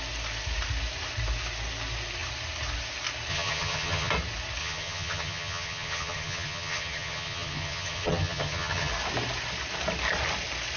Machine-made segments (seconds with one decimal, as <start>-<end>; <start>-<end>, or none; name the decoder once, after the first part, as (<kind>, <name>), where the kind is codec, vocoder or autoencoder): 3.3-4.1 (vocoder, HiFi-GAN); 4.6-8.9